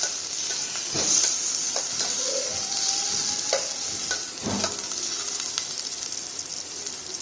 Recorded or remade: recorded